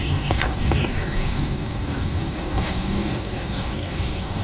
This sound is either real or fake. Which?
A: fake